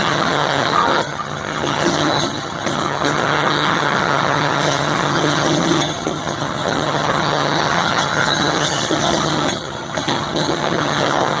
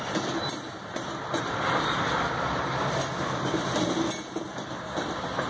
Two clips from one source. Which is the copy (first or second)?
first